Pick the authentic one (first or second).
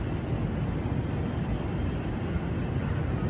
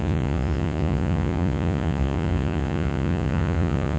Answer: first